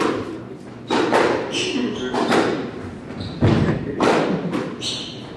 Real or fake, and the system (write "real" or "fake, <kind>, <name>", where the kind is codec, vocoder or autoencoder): real